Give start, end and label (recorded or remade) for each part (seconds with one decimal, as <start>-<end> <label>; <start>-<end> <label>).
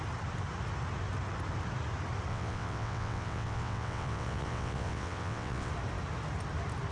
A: 0.0-2.3 recorded; 2.3-5.7 remade; 5.7-6.9 recorded